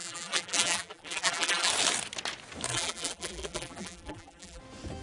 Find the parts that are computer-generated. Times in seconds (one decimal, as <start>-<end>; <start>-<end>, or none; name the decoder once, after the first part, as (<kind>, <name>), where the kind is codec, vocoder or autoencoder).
0.0-1.7 (vocoder, BigVGAN v2); 2.7-4.6